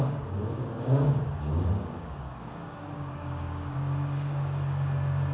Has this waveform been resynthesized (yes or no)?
yes